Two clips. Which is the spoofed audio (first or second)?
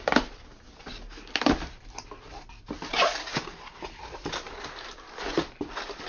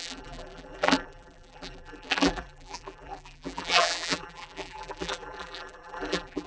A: second